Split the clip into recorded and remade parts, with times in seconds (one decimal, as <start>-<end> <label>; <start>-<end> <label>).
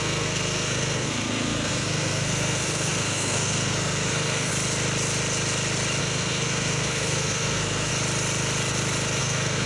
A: 0.0-4.5 remade; 4.5-6.0 recorded; 6.0-7.9 remade; 7.9-9.2 recorded; 9.2-9.7 remade